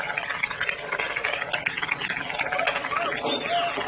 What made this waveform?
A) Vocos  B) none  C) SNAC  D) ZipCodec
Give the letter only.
B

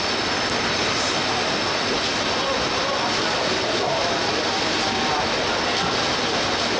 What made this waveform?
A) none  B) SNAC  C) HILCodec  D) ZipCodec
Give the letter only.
A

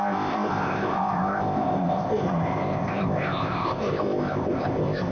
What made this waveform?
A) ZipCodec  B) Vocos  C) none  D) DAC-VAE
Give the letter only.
A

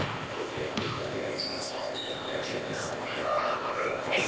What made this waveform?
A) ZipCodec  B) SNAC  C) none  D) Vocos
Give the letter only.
A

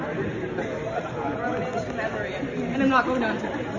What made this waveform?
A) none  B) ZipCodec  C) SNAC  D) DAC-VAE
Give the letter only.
A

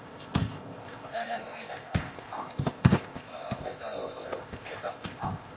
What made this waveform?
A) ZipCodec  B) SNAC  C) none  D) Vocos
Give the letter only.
A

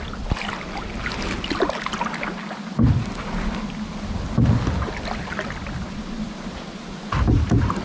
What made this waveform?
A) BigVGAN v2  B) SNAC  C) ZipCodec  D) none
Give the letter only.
D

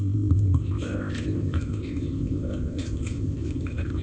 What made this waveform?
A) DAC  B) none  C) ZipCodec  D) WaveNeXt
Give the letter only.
C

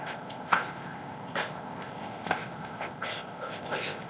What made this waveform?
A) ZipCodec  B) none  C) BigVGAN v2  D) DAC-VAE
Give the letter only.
A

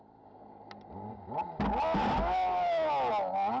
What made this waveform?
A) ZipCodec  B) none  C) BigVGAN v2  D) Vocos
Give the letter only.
B